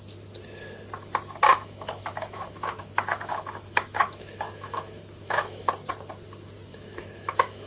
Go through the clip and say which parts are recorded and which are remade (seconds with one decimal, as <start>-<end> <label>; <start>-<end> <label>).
0.0-1.5 recorded; 1.5-5.7 remade; 5.7-6.7 recorded; 6.7-7.7 remade